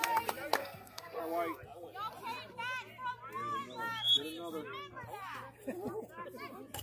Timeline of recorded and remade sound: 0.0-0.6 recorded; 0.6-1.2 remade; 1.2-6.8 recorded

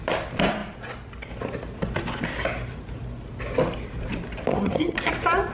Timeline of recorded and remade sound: 0.0-4.5 recorded; 4.5-5.1 remade; 5.1-5.5 recorded